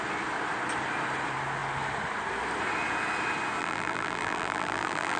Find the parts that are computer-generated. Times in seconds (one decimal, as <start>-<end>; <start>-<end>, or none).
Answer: 3.6-5.2